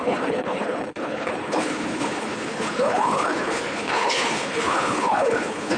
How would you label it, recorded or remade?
remade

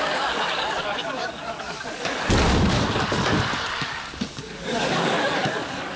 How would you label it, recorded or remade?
remade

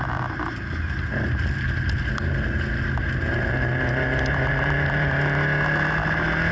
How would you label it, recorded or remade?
recorded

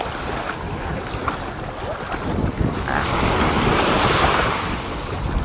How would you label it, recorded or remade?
recorded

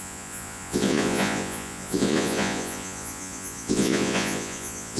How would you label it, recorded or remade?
remade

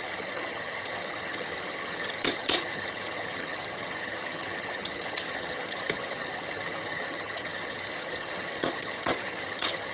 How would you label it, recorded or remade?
remade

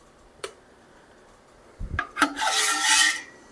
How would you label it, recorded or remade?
remade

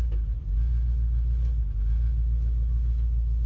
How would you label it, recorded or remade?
recorded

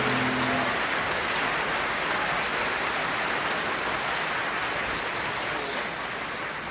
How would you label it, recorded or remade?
recorded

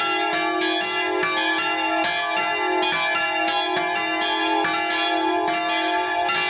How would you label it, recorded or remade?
recorded